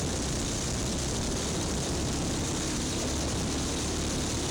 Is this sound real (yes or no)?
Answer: no